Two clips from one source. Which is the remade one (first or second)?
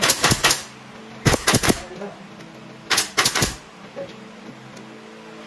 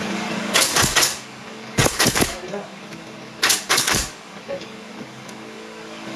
second